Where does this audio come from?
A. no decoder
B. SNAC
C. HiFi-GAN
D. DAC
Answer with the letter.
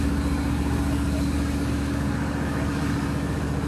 D